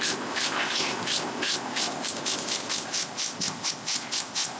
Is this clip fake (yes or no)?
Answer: yes